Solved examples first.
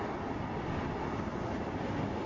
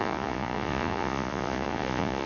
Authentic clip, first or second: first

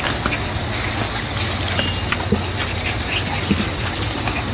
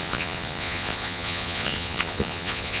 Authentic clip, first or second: first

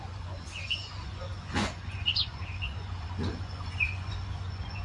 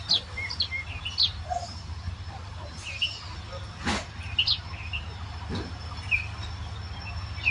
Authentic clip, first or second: second